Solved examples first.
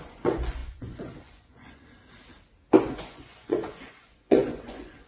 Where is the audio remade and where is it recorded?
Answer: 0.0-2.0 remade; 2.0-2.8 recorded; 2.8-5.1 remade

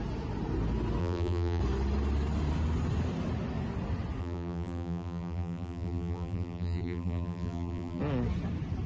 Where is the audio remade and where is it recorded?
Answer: 0.0-1.0 recorded; 1.0-1.6 remade; 1.6-4.2 recorded; 4.2-8.0 remade; 8.0-8.9 recorded

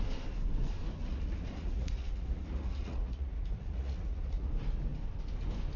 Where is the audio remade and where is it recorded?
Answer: 0.0-1.0 recorded; 1.0-4.5 remade; 4.5-5.8 recorded

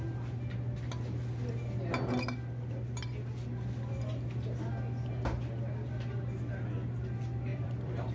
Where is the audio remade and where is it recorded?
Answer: 0.0-7.5 recorded; 7.5-8.1 remade

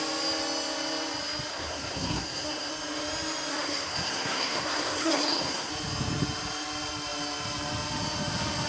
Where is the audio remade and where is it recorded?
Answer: 0.0-1.5 recorded; 1.5-2.7 remade; 2.7-3.5 recorded; 3.5-5.7 remade; 5.7-8.7 recorded

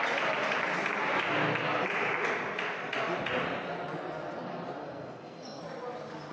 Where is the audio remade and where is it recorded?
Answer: 0.0-4.8 recorded; 4.8-5.6 remade; 5.6-6.3 recorded

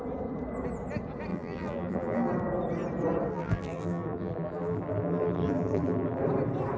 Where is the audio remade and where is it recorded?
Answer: 0.0-1.3 recorded; 1.3-2.3 remade; 2.3-3.3 recorded; 3.3-6.2 remade; 6.2-6.8 recorded